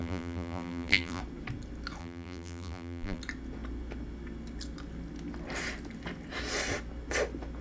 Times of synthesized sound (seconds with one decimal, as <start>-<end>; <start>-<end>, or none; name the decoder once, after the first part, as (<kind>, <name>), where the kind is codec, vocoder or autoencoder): 0.0-1.2 (vocoder, BigVGAN v2); 2.0-3.2